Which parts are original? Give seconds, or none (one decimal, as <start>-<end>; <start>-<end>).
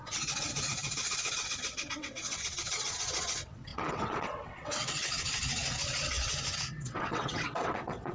none